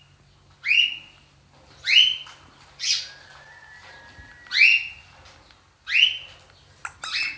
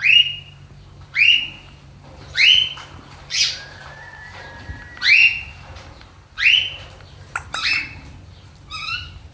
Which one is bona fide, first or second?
first